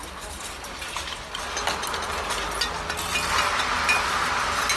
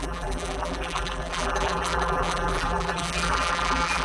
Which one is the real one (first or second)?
first